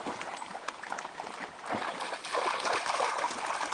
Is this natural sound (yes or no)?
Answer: yes